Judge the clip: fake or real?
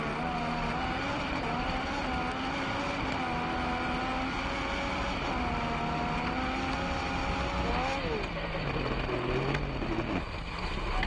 real